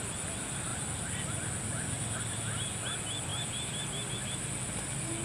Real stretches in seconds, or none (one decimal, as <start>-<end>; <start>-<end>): 0.0-5.2